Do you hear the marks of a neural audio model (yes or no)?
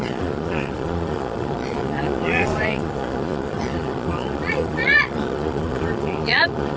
yes